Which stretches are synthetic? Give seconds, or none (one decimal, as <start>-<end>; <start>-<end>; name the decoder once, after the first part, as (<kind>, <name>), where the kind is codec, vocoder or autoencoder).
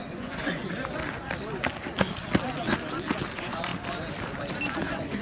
0.0-0.6 (vocoder, Vocos); 3.3-3.7; 4.8-5.2